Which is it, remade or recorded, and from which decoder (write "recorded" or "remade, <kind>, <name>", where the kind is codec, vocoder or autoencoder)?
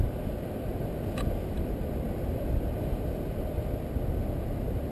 recorded